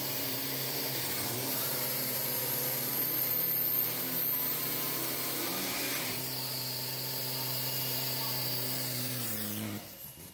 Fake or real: fake